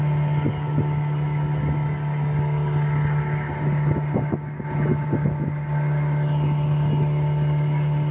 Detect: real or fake real